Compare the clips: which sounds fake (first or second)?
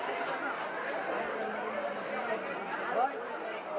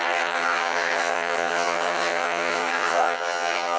second